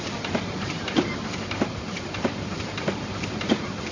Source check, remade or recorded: remade